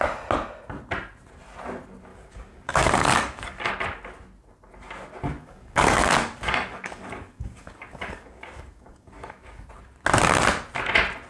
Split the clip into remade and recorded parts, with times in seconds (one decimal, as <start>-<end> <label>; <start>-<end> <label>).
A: 0.0-2.1 recorded; 2.1-3.7 remade; 3.7-5.4 recorded; 5.4-9.7 remade; 9.7-11.3 recorded